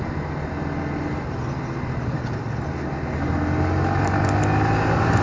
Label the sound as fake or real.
real